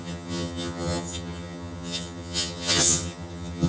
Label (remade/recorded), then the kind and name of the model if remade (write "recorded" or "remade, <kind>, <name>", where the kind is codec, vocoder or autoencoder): remade, vocoder, HiFi-GAN